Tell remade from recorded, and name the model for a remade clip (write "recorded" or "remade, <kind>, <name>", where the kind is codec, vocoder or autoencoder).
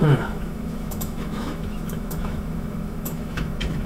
remade, autoencoder, DAC-VAE